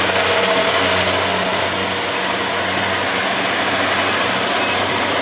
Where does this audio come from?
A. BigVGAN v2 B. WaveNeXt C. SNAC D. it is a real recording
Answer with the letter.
D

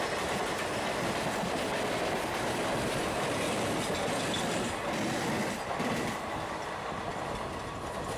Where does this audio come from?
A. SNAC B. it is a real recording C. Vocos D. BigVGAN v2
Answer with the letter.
B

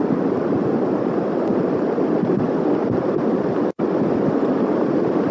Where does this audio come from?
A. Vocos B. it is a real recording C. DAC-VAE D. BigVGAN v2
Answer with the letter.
D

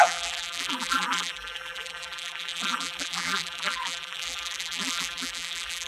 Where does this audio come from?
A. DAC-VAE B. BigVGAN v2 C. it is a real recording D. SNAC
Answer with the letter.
B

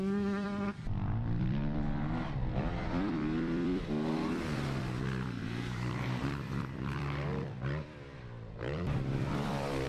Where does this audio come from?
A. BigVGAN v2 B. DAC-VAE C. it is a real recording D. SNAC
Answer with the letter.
A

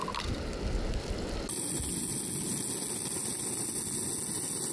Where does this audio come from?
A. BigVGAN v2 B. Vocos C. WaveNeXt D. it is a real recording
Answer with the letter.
D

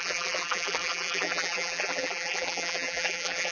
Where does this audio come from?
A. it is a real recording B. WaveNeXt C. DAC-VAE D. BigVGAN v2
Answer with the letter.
D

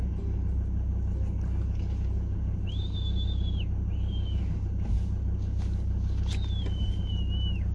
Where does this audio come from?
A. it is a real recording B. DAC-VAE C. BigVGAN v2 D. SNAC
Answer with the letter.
A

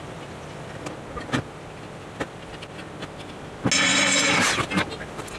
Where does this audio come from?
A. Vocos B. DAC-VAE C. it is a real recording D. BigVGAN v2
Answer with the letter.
C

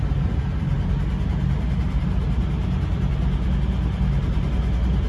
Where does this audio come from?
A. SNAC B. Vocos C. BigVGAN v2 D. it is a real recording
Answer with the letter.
D